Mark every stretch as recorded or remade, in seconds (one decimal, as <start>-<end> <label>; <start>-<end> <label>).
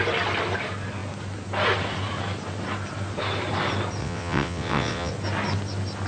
0.0-4.0 recorded; 4.0-5.1 remade; 5.1-6.1 recorded